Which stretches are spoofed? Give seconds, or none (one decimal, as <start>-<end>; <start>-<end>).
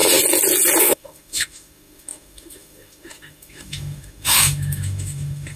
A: 0.8-5.6